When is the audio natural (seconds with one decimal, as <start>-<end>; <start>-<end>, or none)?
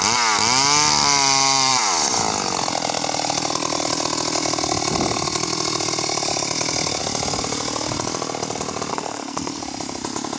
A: 0.0-8.9; 9.6-10.4